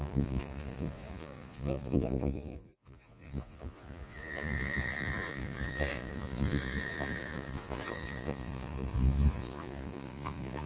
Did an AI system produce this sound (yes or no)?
yes